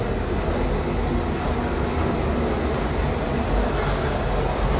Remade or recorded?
recorded